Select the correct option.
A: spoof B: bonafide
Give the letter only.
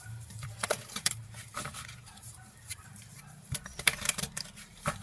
A